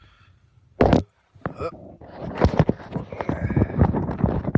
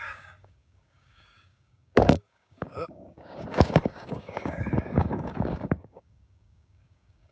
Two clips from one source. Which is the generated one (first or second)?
second